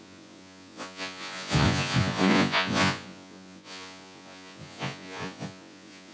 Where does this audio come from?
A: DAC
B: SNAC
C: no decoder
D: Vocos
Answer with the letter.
D